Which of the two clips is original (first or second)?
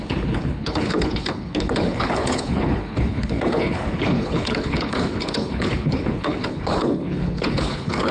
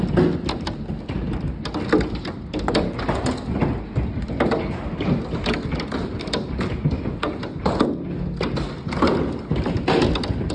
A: second